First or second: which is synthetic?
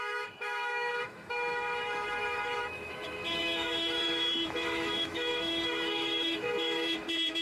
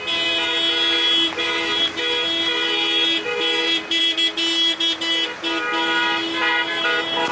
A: first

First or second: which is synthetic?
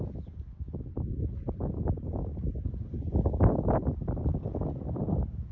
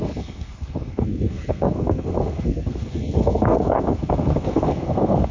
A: second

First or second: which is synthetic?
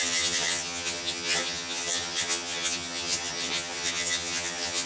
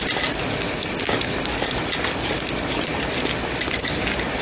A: first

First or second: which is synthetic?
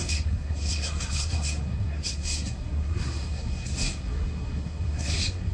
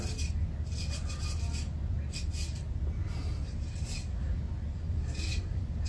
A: first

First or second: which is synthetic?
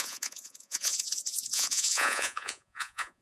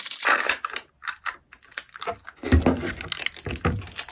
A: first